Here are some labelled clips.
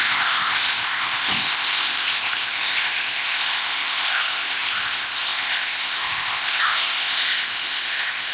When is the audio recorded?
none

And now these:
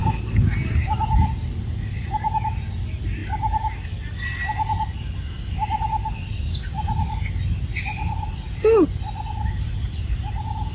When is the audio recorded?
0.0-10.7